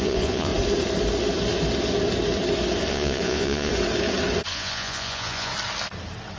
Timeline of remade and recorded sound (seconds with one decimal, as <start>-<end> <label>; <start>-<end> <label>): 0.0-0.5 remade; 0.5-2.9 recorded; 2.9-3.7 remade; 3.7-4.5 recorded; 4.5-5.5 remade; 5.5-6.4 recorded